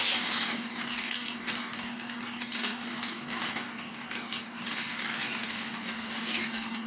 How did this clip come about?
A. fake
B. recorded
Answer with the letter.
A